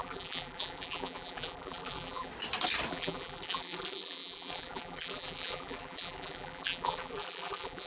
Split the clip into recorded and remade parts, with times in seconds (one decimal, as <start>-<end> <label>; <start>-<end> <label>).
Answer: 0.0-2.3 remade; 2.3-2.9 recorded; 2.9-7.9 remade